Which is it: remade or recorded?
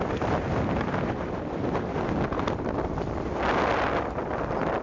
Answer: recorded